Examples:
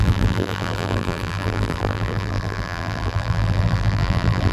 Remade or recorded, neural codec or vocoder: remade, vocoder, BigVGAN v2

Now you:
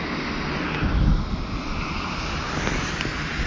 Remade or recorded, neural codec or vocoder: recorded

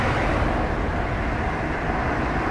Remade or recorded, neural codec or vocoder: recorded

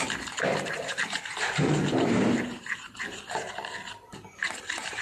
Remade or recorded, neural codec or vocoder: remade, vocoder, BigVGAN v2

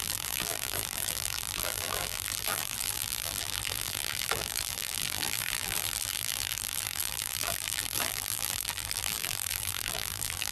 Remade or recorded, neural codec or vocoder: remade, vocoder, BigVGAN v2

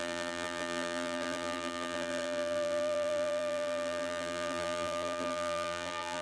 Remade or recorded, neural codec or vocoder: remade, vocoder, BigVGAN v2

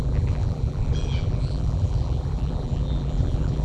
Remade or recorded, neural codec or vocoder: remade, vocoder, BigVGAN v2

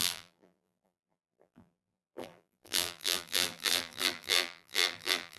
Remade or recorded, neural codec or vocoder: remade, vocoder, BigVGAN v2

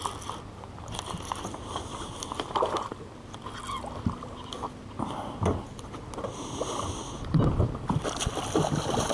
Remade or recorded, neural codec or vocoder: recorded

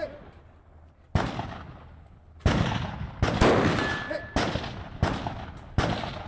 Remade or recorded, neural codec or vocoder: recorded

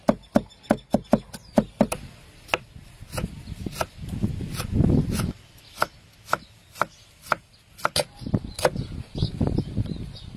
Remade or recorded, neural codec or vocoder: recorded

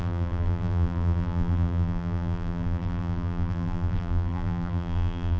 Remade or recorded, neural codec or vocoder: remade, vocoder, BigVGAN v2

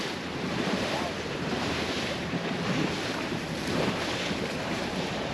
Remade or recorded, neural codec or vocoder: remade, vocoder, BigVGAN v2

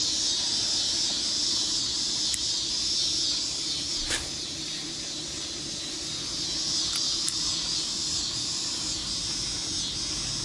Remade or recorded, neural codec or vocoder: recorded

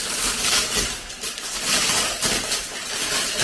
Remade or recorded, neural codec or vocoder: remade, vocoder, BigVGAN v2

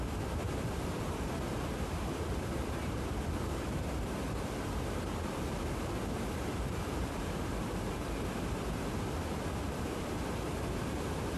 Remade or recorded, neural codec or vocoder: remade, vocoder, BigVGAN v2